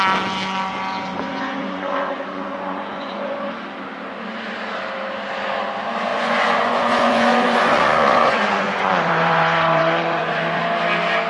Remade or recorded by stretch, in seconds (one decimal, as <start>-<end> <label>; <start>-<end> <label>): 0.0-1.1 recorded; 1.1-3.5 remade; 3.5-6.1 recorded; 6.1-10.6 remade; 10.6-11.3 recorded